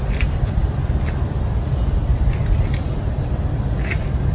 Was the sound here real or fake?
real